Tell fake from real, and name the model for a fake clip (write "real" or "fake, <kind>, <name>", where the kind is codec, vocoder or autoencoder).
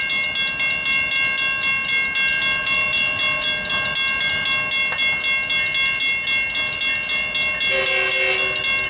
real